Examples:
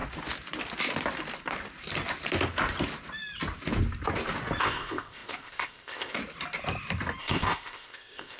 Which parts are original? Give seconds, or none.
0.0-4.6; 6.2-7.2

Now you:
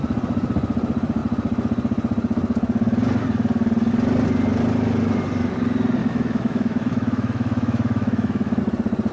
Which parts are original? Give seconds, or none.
0.0-6.0; 8.6-9.1

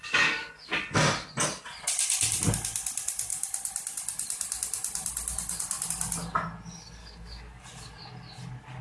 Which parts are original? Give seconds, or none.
0.8-7.0; 7.6-8.8

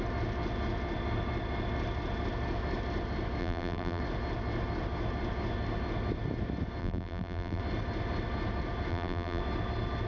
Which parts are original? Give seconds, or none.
0.0-3.4; 4.0-6.8; 7.6-8.9; 9.4-10.1

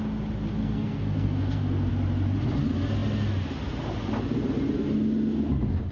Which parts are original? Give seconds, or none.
0.0-0.6; 1.9-5.9

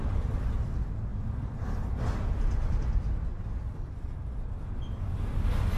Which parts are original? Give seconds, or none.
0.0-5.8

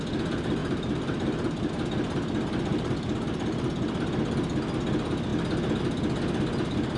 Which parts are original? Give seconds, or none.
0.0-0.6; 1.7-2.7; 3.7-7.0

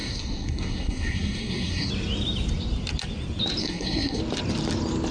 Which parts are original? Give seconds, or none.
1.9-3.6; 4.2-5.1